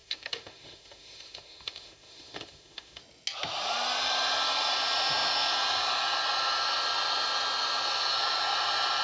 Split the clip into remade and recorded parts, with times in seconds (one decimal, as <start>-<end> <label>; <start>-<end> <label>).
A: 0.0-3.0 remade; 3.0-9.0 recorded